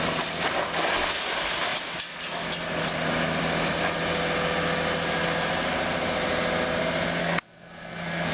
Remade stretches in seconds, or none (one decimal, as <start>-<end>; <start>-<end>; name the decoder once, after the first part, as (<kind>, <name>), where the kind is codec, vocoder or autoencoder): 7.2-8.3 (codec, SNAC)